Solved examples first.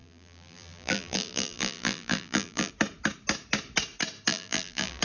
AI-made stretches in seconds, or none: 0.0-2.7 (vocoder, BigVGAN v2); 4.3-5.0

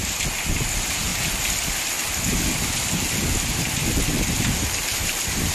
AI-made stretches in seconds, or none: 0.7-1.1 (vocoder, BigVGAN v2); 4.4-5.5

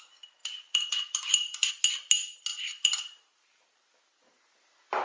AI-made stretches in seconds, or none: 0.4-1.7 (vocoder, BigVGAN v2); 2.5-4.1

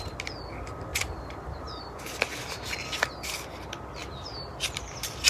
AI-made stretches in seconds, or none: 0.9-2.0 (vocoder, BigVGAN v2); 4.0-4.8

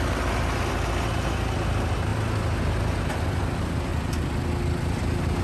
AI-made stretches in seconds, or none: 3.9-5.4 (vocoder, BigVGAN v2)

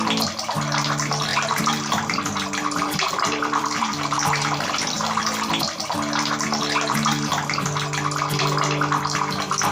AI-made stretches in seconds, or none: 1.3-5.6 (vocoder, BigVGAN v2)

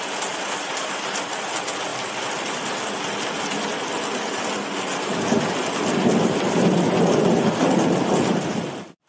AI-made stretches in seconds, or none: none